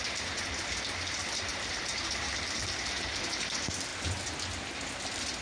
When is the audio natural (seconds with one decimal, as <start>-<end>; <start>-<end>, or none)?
0.0-1.5; 3.2-5.4